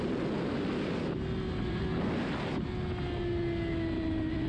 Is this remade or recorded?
recorded